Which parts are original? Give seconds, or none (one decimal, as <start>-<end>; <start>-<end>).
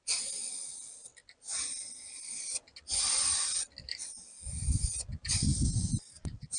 0.0-6.6